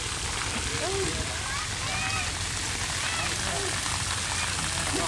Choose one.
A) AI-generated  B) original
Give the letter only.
B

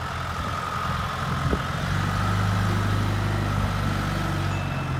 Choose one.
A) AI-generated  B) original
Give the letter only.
B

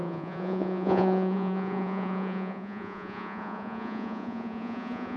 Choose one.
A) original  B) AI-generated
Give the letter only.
B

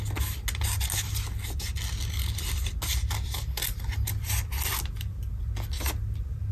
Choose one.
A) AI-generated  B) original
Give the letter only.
B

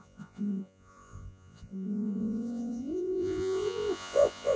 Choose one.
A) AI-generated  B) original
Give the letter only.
A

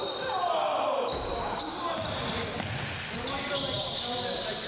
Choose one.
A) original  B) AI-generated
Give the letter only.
A